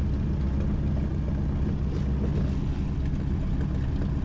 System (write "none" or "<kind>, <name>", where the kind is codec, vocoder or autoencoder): none